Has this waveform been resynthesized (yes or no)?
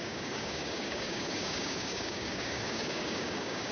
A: yes